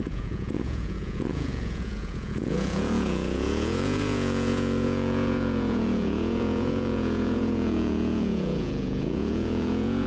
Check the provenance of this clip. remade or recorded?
remade